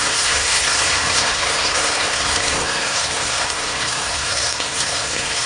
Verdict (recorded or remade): remade